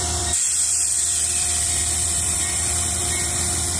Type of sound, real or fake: fake